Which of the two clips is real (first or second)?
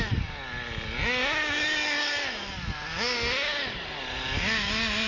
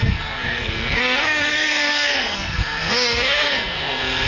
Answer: first